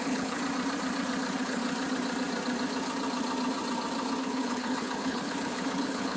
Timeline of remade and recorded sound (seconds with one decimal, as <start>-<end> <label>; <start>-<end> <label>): 0.0-0.4 remade; 0.4-1.2 recorded; 1.2-1.6 remade; 1.6-4.2 recorded; 4.2-6.2 remade